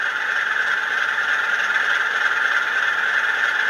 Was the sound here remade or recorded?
recorded